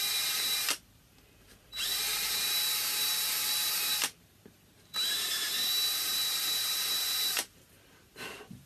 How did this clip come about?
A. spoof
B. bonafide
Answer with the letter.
A